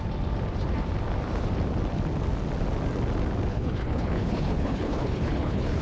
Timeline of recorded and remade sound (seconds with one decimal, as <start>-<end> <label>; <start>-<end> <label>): 0.0-3.5 recorded; 3.5-5.8 remade